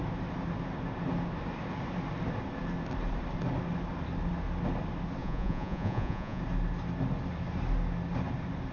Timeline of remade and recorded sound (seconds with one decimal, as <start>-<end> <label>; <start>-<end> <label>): 0.0-5.2 recorded; 5.2-6.4 remade; 6.4-8.7 recorded

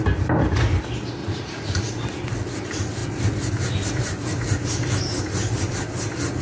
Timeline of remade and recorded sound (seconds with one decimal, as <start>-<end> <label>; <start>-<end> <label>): 0.0-1.2 recorded; 1.2-1.9 remade; 1.9-6.4 recorded

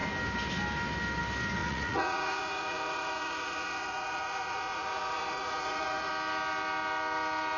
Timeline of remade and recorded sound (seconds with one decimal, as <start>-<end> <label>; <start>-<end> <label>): 0.0-1.6 recorded; 1.6-6.1 remade; 6.1-7.6 recorded

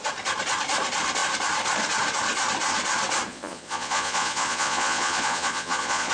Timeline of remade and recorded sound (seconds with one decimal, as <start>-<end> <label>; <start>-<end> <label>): 0.0-3.3 recorded; 3.3-6.1 remade